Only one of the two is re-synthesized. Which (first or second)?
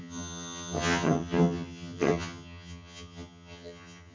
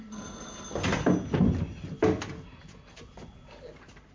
first